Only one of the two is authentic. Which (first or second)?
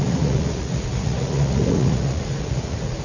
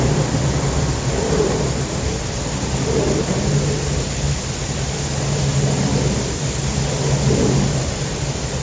second